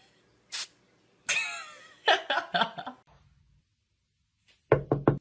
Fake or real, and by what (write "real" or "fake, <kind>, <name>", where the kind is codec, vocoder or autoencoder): real